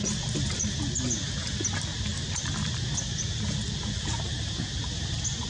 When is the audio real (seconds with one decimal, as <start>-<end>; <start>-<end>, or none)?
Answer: 0.0-5.5